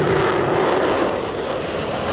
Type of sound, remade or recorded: recorded